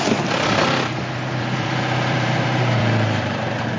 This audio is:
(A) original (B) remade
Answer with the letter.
B